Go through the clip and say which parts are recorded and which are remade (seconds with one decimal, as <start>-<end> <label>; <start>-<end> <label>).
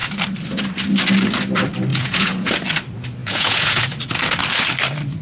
0.0-1.9 recorded; 1.9-2.5 remade; 2.5-3.2 recorded; 3.2-3.8 remade; 3.8-5.2 recorded